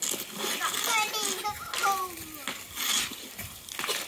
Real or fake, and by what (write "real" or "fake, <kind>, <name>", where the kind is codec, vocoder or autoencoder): real